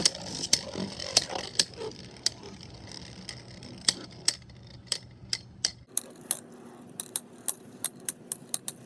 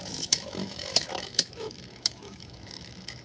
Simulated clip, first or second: second